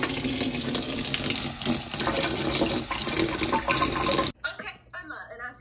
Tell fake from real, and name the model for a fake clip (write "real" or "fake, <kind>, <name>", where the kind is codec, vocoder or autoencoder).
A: real